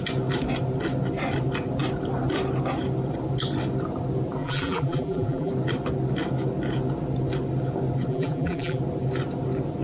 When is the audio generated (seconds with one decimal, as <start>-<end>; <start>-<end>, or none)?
4.4-5.5; 8.1-8.8